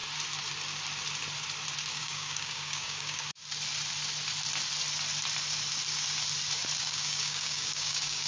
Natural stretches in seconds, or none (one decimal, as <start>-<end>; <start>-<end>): 0.0-1.9; 3.4-6.8